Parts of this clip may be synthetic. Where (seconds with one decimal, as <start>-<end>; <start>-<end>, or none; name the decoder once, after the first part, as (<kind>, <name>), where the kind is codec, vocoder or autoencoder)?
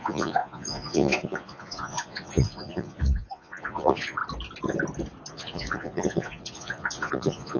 0.0-4.2 (vocoder, Vocos); 5.3-7.6